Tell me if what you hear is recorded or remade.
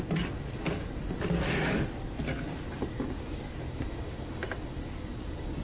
recorded